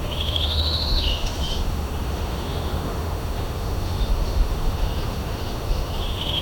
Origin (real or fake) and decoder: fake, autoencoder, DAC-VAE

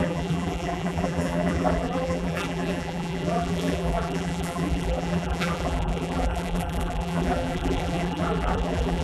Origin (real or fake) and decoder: fake, vocoder, BigVGAN v2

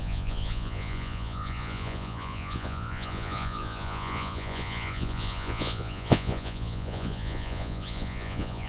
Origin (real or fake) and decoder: fake, vocoder, Vocos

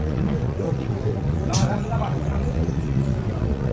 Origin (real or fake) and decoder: fake, vocoder, WaveNeXt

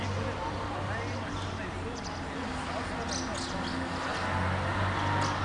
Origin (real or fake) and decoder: real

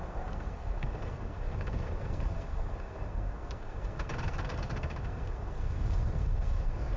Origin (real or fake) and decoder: fake, codec, SNAC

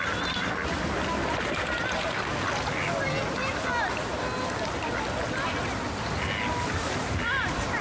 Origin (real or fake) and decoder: real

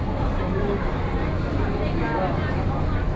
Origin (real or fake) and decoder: real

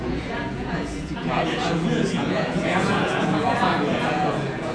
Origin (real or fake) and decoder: fake, vocoder, Vocos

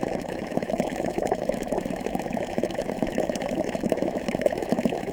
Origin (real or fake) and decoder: fake, autoencoder, DAC-VAE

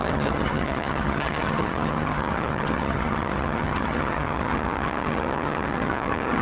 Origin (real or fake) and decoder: fake, vocoder, HiFi-GAN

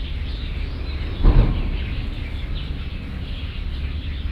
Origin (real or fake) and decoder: real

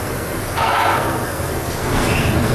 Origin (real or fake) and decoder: fake, codec, SNAC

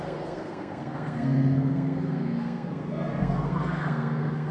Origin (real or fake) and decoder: fake, codec, SNAC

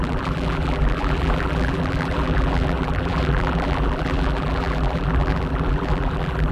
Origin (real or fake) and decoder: fake, vocoder, BigVGAN v2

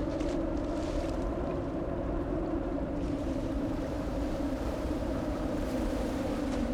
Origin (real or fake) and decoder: fake, vocoder, BigVGAN v2